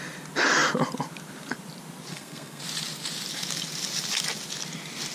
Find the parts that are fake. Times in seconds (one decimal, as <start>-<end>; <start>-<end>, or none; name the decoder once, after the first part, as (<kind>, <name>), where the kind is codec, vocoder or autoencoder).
2.1-2.6 (codec, SNAC)